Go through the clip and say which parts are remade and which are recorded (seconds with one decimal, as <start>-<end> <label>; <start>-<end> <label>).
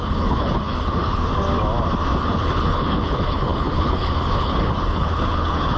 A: 0.0-1.3 remade; 1.3-2.2 recorded; 2.2-5.8 remade